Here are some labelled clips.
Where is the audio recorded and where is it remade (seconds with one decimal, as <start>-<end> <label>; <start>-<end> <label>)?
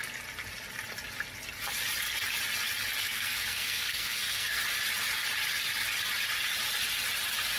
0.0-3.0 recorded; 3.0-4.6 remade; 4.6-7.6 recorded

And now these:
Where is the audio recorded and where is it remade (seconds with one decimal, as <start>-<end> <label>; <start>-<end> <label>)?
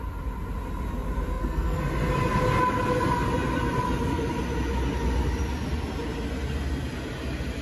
0.0-1.3 recorded; 1.3-1.8 remade; 1.8-7.6 recorded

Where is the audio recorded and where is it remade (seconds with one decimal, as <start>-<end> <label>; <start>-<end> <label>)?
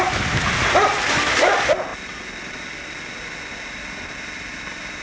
0.0-5.0 recorded